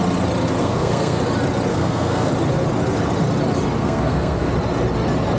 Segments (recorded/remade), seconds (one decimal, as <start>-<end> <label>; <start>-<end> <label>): 0.0-0.6 recorded; 0.6-1.2 remade; 1.2-1.7 recorded; 1.7-2.3 remade; 2.3-3.8 recorded; 3.8-4.5 remade; 4.5-5.4 recorded